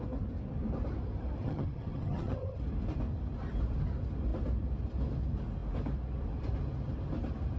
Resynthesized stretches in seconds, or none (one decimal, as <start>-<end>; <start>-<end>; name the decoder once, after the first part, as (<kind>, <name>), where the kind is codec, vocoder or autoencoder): 1.4-2.6 (vocoder, HiFi-GAN)